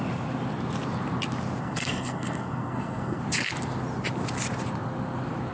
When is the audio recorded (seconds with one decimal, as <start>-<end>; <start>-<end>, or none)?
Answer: 0.0-1.6; 3.2-5.5

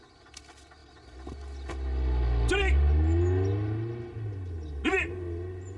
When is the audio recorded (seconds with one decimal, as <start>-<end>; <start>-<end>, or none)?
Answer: 0.0-5.8

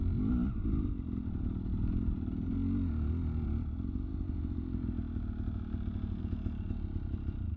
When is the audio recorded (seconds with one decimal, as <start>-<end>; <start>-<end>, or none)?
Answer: 0.0-7.6

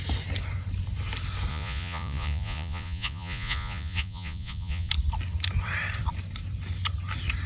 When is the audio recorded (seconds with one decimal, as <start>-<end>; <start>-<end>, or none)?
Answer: 0.0-1.5; 4.9-7.5

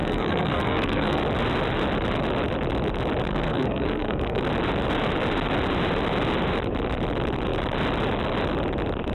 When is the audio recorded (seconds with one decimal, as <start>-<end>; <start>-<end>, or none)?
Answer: 1.2-3.3; 4.4-9.1

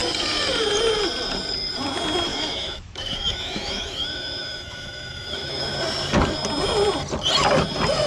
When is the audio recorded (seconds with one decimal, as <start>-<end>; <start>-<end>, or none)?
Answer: 0.0-2.3; 5.8-8.1

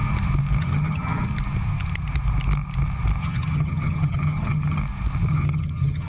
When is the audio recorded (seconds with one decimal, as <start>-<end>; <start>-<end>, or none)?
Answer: 0.0-0.6; 1.3-3.2; 4.8-5.3

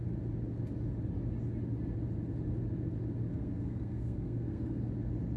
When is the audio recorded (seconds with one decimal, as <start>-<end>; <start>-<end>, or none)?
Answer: 0.0-3.3; 4.9-5.4